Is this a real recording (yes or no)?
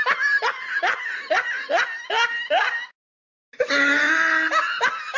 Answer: yes